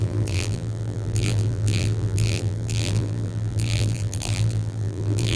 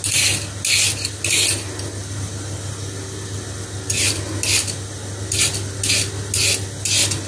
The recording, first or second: second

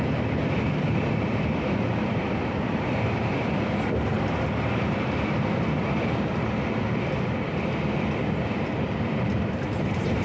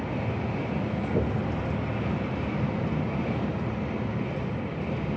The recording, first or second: second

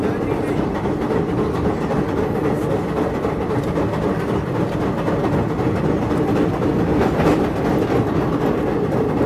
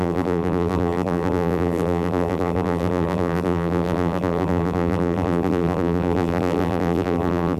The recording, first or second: first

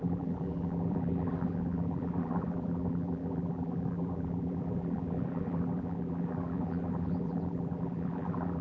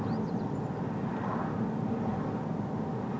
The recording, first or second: second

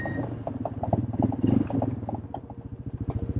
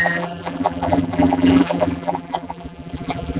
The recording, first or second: first